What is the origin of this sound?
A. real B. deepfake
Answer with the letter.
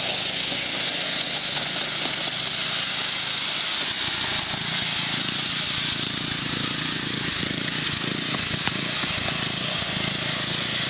B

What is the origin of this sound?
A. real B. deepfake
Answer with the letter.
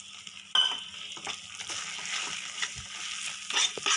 A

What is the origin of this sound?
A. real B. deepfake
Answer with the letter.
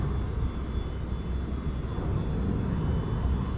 A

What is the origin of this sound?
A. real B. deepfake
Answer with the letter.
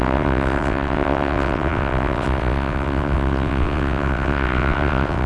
B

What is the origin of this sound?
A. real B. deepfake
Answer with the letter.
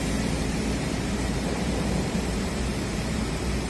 B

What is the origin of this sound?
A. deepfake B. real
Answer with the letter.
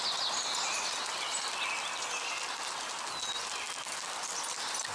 B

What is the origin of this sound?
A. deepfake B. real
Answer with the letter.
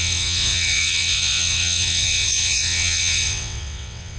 A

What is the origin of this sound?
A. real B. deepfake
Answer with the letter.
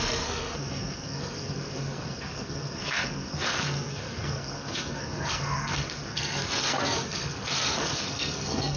B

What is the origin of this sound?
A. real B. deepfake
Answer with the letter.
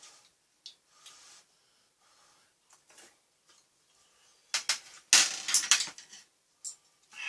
A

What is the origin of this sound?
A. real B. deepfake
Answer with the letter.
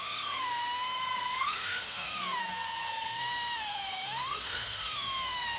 B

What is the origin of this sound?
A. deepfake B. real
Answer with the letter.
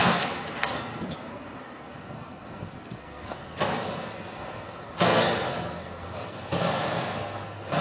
A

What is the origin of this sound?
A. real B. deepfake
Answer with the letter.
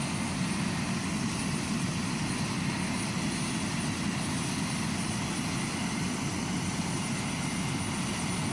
A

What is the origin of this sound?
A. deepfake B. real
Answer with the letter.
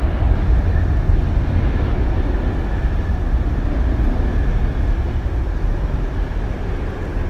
B